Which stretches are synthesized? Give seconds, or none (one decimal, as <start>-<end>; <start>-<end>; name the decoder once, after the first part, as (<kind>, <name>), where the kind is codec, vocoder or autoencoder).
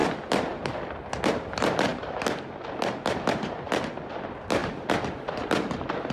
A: 0.0-0.5 (vocoder, BigVGAN v2)